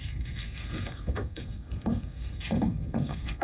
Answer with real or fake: fake